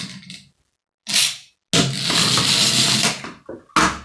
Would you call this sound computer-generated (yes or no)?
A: no